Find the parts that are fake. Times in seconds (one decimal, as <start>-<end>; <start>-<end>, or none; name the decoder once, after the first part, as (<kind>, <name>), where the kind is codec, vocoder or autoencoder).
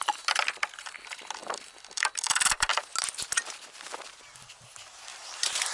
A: 1.4-2.7 (vocoder, BigVGAN v2); 5.1-5.7